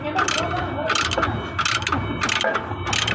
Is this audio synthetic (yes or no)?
no